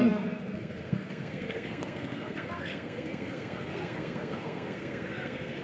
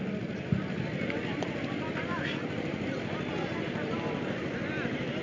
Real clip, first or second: second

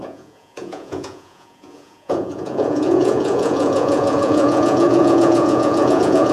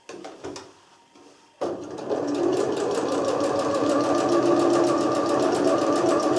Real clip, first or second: second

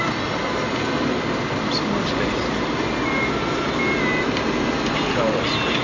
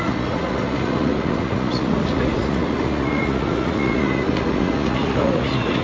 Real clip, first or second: first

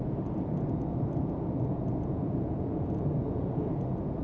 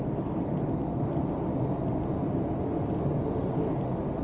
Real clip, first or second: second